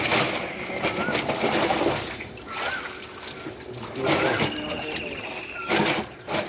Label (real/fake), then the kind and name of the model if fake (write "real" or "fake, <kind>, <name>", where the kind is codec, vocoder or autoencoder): real